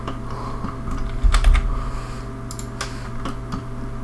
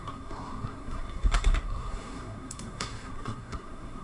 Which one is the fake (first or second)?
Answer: second